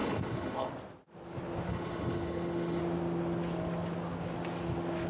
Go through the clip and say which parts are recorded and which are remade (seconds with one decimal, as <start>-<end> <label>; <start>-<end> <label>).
0.0-0.7 remade; 0.7-1.7 recorded; 1.7-2.8 remade; 2.8-5.1 recorded

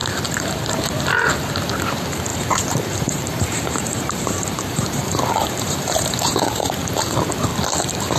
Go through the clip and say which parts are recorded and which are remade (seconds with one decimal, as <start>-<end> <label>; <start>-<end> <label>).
0.0-2.3 recorded; 2.3-6.7 remade; 6.7-8.2 recorded